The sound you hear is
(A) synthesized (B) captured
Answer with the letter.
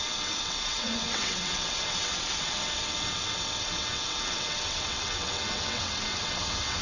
A